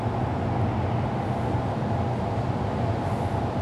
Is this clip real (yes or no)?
yes